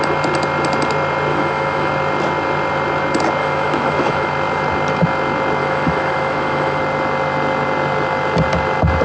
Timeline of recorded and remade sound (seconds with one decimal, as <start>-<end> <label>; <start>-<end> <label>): 0.0-1.3 recorded; 1.3-1.9 remade; 1.9-3.4 recorded; 3.4-4.3 remade; 4.3-5.6 recorded; 5.6-6.8 remade; 6.8-9.0 recorded